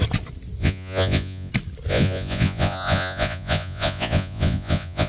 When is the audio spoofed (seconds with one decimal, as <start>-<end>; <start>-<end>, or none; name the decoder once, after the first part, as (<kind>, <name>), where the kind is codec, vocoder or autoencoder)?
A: 0.6-1.5 (vocoder, Vocos); 1.9-5.1